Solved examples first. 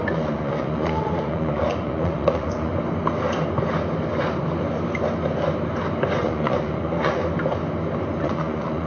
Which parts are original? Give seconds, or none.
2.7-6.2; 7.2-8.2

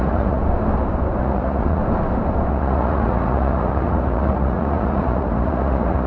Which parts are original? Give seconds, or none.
0.4-1.2; 1.8-2.5

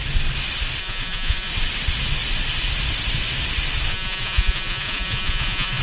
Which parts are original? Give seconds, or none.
0.0-0.8; 1.5-3.9

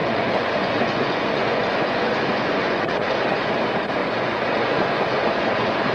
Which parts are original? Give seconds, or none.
3.5-4.0

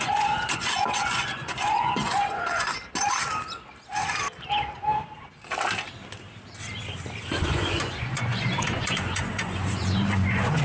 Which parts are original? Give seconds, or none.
2.7-7.4

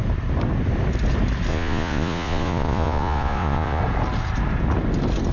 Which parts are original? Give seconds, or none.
0.0-1.5; 3.8-5.3

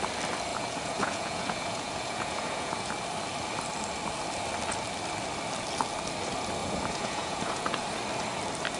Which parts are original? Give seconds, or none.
0.0-0.5; 2.9-6.6; 7.8-8.8